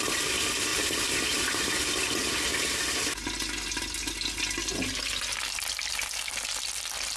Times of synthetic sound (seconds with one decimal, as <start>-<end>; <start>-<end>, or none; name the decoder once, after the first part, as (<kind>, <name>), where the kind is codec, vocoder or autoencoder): 0.7-1.7 (vocoder, BigVGAN v2)